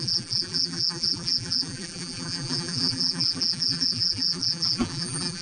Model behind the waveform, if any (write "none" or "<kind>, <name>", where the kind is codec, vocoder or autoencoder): vocoder, BigVGAN v2